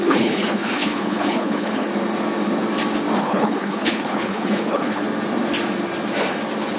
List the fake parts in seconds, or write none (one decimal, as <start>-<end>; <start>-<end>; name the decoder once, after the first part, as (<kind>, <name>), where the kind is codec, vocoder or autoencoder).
0.0-1.9 (codec, HILCodec); 3.2-5.0